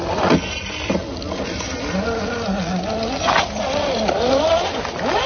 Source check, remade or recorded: recorded